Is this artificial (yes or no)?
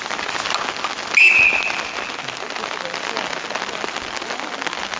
no